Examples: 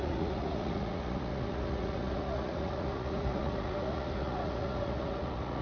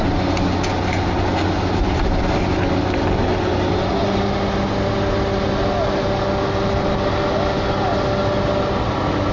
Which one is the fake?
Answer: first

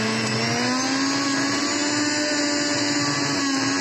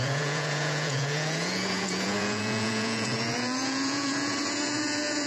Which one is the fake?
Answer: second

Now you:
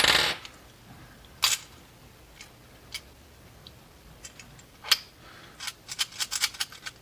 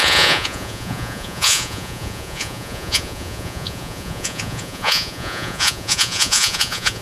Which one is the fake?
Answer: second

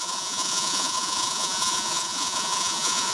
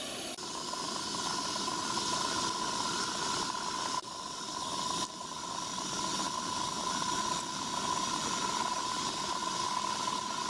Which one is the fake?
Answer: first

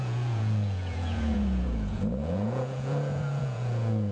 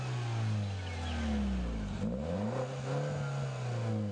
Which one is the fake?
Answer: first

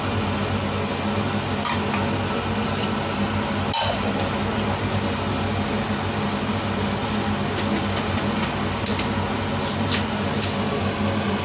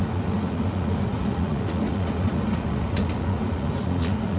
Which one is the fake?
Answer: second